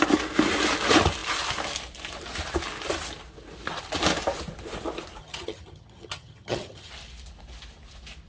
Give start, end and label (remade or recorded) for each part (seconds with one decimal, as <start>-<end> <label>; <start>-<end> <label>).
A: 0.0-5.2 recorded; 5.2-6.9 remade; 6.9-8.3 recorded